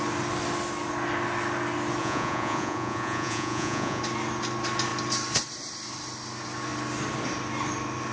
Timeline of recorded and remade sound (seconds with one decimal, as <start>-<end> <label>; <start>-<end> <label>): 0.0-2.0 recorded; 2.0-4.0 remade; 4.0-8.1 recorded